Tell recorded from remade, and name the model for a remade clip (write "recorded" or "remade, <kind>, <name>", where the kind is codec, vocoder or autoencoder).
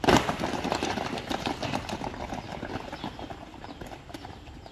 recorded